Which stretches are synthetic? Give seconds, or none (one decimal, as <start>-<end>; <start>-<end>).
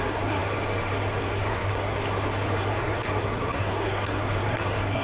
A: 0.0-0.4; 1.2-2.0; 2.6-5.0